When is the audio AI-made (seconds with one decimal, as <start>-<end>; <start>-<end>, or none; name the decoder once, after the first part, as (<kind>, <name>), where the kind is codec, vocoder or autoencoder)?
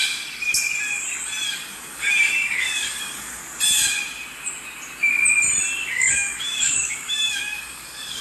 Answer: 1.5-3.4 (codec, DAC); 5.9-8.2